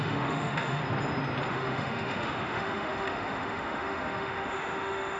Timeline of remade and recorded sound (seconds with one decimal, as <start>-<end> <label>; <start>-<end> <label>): 0.0-0.8 remade; 0.8-1.5 recorded; 1.5-5.2 remade